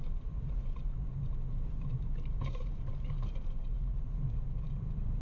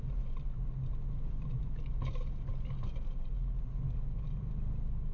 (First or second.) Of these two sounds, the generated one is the first